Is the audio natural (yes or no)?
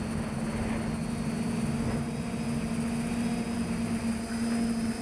yes